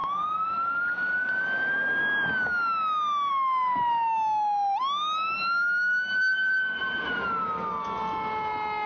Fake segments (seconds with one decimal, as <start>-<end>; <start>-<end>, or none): none